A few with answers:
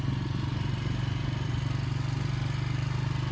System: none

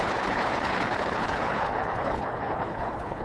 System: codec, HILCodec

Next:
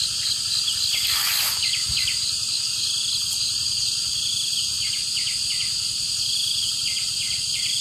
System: none